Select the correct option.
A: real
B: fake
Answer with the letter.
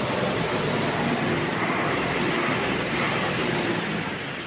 B